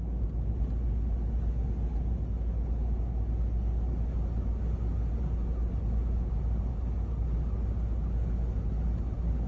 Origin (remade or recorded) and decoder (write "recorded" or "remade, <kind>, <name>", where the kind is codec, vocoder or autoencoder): recorded